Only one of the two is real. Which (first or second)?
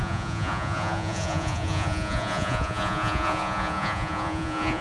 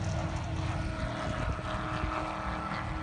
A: second